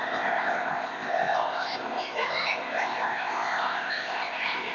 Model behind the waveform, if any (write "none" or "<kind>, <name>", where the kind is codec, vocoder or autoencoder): codec, ZipCodec